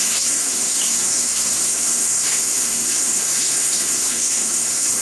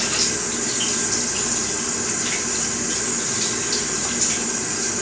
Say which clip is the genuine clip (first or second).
second